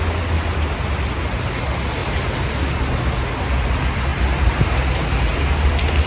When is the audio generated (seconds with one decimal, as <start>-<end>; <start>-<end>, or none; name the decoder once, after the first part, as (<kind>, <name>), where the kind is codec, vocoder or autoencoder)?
2.0-2.7 (vocoder, BigVGAN v2); 4.1-5.4